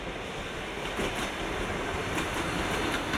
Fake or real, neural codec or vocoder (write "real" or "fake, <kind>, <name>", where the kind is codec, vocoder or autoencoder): real